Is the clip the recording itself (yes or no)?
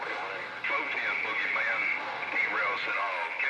yes